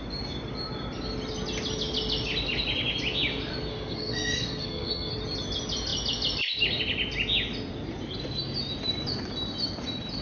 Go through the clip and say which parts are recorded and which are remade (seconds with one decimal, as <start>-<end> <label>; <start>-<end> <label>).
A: 0.0-3.7 recorded; 3.7-5.1 remade; 5.1-10.2 recorded

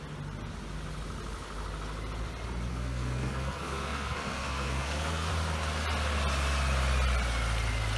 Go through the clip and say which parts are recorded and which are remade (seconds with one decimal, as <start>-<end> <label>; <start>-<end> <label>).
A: 0.0-2.7 recorded; 2.7-5.3 remade; 5.3-8.0 recorded

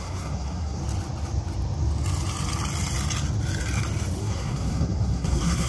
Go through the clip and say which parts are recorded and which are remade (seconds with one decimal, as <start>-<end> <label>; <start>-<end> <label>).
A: 0.0-0.8 remade; 0.8-4.2 recorded; 4.2-5.7 remade

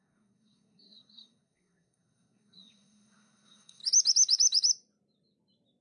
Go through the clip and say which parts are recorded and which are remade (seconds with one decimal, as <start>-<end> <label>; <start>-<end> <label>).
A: 0.0-3.8 remade; 3.8-5.8 recorded

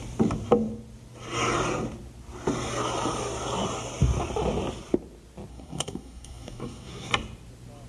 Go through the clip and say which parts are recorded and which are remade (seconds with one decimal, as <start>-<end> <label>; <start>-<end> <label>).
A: 0.0-5.5 recorded; 5.5-7.1 remade; 7.1-7.9 recorded

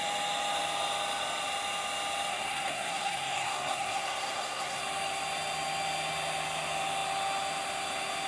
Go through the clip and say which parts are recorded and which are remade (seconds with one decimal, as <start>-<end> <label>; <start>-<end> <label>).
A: 0.0-2.3 recorded; 2.3-4.8 remade; 4.8-8.3 recorded

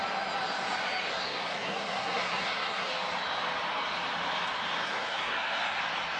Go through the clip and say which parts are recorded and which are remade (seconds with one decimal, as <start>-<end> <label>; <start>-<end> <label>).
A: 0.0-1.1 recorded; 1.1-2.9 remade; 2.9-4.8 recorded; 4.8-5.8 remade; 5.8-6.2 recorded